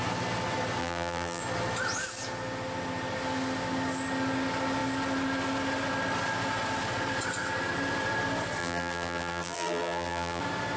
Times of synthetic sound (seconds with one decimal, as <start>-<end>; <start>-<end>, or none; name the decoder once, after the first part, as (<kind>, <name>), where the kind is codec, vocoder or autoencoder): 0.8-1.4 (vocoder, BigVGAN v2); 8.6-10.4

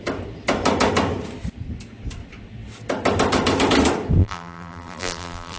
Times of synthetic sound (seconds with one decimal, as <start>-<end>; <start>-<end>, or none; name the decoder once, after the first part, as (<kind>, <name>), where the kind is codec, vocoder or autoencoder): 4.2-5.6 (vocoder, BigVGAN v2)

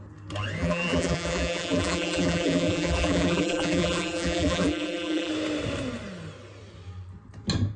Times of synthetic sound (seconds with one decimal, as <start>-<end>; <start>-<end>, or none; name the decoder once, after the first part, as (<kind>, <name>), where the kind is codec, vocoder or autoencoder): 0.6-5.3 (vocoder, BigVGAN v2)